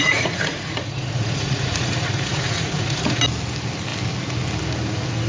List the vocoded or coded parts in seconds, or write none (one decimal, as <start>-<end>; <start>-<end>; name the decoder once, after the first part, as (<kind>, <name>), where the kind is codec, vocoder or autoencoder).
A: 0.0-3.2 (vocoder, Vocos)